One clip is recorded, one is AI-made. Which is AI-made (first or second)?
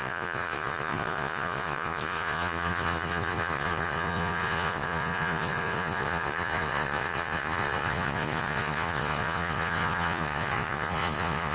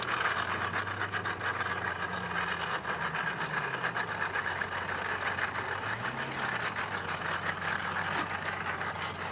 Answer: first